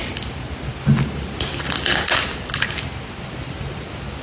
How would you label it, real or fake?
real